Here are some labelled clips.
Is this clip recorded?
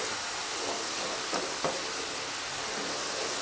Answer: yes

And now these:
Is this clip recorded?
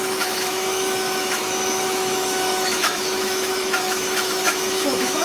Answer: no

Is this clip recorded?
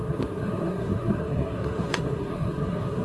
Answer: no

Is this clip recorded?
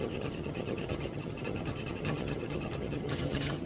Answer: no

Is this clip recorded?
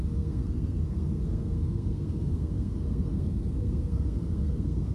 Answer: no